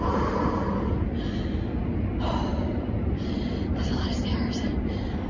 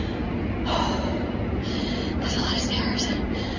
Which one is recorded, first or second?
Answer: second